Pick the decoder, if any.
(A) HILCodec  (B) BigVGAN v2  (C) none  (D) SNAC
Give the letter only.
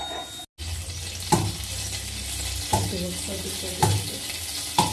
C